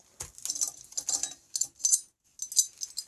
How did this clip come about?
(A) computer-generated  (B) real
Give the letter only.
B